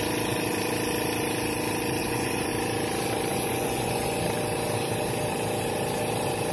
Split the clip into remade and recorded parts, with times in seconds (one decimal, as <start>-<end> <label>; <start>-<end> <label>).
0.0-2.0 recorded; 2.0-2.5 remade; 2.5-3.3 recorded; 3.3-4.2 remade; 4.2-6.5 recorded